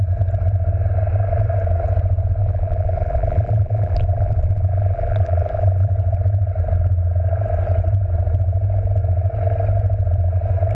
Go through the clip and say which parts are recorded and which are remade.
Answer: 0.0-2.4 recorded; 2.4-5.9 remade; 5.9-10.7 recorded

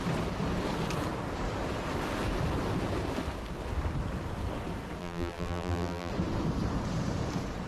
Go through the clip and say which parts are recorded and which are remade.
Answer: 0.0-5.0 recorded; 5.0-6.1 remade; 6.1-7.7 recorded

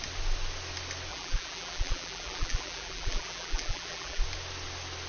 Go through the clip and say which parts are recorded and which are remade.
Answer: 0.0-1.1 recorded; 1.1-4.2 remade; 4.2-5.1 recorded

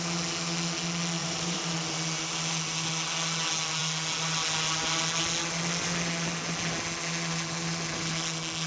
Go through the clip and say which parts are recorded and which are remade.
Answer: 0.0-1.2 recorded; 1.2-1.7 remade; 1.7-8.7 recorded

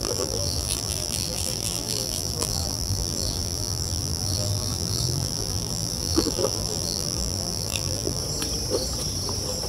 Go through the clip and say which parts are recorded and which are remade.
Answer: 0.0-8.2 remade; 8.2-9.7 recorded